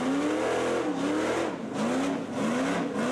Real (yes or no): yes